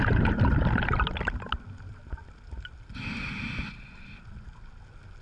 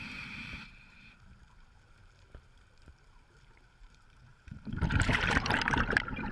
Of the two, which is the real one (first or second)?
first